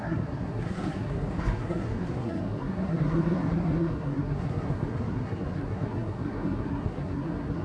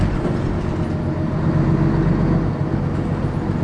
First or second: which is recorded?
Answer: second